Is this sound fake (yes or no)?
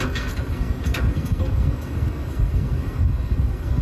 yes